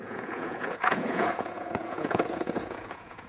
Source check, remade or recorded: remade